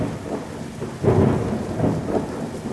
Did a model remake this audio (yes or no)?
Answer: no